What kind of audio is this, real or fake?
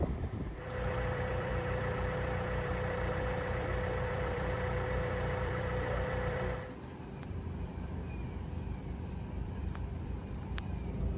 fake